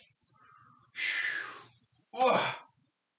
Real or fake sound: real